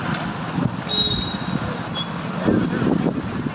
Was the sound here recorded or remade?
recorded